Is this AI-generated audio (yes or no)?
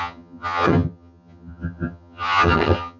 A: yes